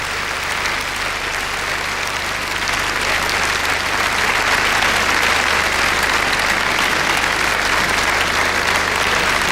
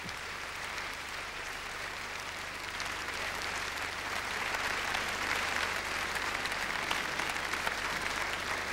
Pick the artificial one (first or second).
second